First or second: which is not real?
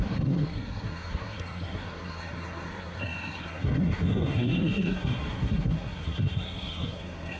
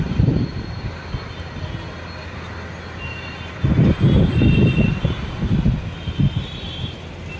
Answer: first